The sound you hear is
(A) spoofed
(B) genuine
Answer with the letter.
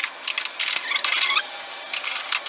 B